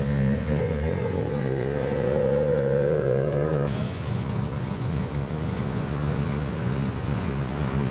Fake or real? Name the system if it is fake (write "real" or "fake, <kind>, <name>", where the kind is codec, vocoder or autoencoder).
fake, vocoder, Vocos